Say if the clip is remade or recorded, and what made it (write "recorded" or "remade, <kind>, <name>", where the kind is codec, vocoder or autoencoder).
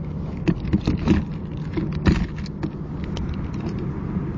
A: recorded